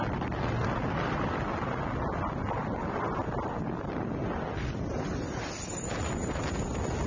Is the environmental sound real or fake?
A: real